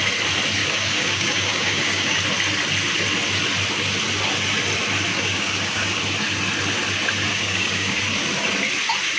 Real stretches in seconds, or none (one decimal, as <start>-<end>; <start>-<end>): 0.0-0.6; 2.2-5.1; 6.0-7.3; 8.0-9.2